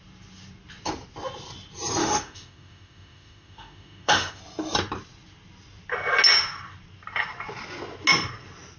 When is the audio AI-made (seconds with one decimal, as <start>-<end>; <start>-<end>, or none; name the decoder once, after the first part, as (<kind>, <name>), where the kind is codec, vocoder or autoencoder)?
2.0-4.4 (autoencoder, DAC-VAE)